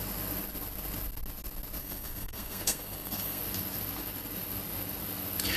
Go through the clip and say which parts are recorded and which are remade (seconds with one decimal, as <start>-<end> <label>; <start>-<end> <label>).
0.0-1.8 recorded; 1.8-3.4 remade; 3.4-5.6 recorded